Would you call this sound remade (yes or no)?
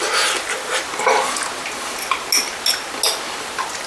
no